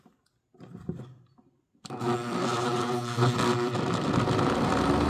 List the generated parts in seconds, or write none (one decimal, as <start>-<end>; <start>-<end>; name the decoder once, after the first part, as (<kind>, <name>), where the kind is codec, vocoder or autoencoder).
0.5-2.8 (vocoder, BigVGAN v2)